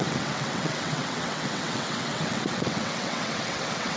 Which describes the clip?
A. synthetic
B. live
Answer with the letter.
A